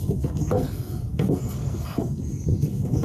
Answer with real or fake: fake